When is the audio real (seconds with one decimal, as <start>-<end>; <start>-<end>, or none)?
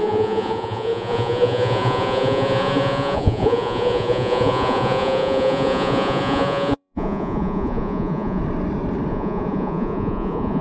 8.4-9.1